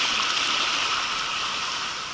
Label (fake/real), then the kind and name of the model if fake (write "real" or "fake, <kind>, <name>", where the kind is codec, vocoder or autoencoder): fake, vocoder, BigVGAN v2